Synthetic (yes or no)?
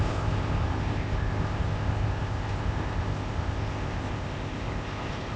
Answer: yes